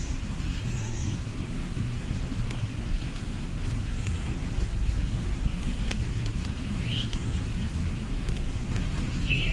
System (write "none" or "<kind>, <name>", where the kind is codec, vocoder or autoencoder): codec, SNAC